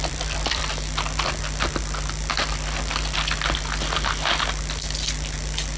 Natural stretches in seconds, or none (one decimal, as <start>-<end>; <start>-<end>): 0.7-5.8